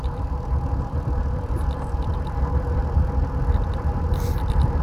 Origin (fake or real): real